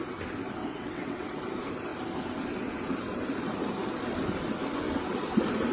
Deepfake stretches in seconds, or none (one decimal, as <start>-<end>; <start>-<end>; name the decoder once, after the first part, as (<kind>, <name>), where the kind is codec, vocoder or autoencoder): 0.6-1.4 (vocoder, WaveNeXt)